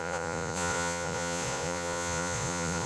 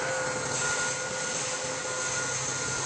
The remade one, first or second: first